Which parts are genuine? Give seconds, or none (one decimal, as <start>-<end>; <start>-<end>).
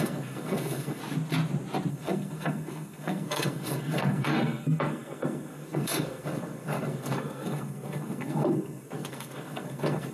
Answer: 1.0-1.9